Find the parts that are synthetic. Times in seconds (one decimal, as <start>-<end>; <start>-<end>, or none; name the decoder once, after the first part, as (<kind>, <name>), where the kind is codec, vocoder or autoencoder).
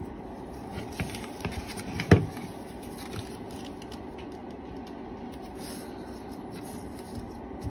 0.7-2.1 (vocoder, BigVGAN v2)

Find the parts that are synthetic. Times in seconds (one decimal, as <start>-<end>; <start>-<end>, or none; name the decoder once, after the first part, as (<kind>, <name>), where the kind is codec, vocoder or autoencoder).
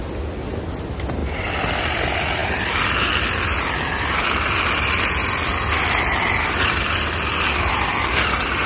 none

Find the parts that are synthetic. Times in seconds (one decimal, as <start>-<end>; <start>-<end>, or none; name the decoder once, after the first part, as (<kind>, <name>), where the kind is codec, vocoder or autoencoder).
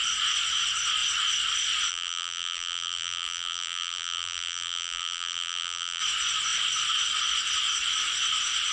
1.9-6.0 (vocoder, BigVGAN v2)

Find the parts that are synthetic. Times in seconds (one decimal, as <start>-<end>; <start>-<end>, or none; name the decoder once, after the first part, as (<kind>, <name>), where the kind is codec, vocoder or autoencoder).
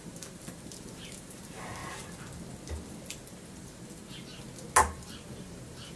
0.0-1.8 (vocoder, BigVGAN v2); 3.3-4.0; 4.8-6.0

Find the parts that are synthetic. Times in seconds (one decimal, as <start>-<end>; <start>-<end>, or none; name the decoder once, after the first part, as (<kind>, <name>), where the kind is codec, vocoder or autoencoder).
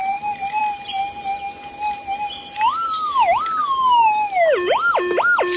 0.0-0.6 (vocoder, BigVGAN v2)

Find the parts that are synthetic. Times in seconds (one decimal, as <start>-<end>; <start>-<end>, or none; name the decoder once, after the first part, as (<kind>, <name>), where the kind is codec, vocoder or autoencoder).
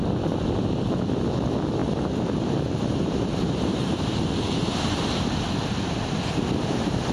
1.8-5.4 (vocoder, BigVGAN v2)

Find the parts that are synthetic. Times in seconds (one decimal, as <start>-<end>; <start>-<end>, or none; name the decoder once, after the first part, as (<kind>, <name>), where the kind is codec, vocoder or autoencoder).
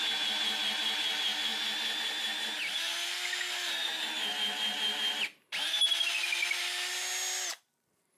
none